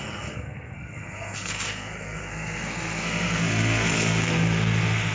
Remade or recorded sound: remade